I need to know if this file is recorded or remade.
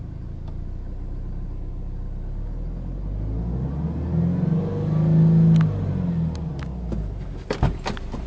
recorded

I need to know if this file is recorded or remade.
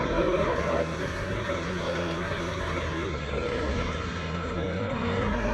remade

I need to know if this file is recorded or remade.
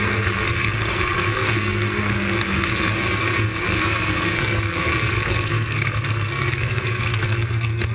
remade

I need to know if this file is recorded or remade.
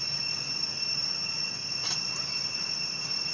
recorded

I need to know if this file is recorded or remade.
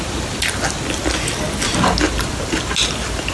recorded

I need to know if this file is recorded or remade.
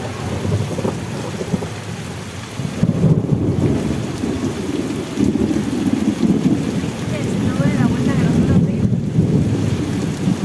recorded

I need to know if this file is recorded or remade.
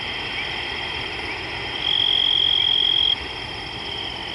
recorded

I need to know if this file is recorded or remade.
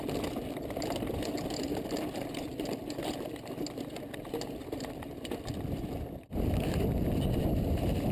recorded